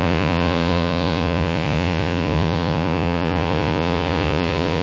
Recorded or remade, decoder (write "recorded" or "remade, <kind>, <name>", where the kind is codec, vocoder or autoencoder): remade, vocoder, Vocos